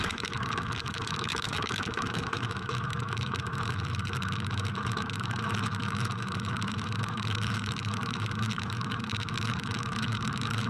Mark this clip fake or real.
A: fake